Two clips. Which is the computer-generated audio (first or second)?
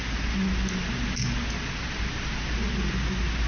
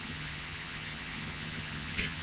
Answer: second